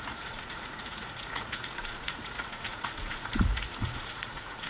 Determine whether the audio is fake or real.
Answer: fake